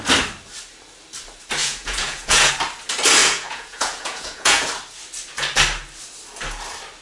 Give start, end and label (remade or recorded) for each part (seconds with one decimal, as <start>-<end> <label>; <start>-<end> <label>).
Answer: 0.0-1.6 recorded; 1.6-2.5 remade; 2.5-3.2 recorded; 3.2-4.7 remade; 4.7-7.0 recorded